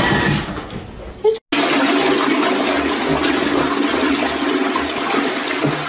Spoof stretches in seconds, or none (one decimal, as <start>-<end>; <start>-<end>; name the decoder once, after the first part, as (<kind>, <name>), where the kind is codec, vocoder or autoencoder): none